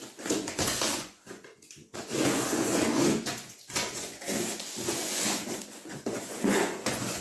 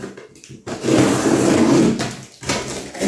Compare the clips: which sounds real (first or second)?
second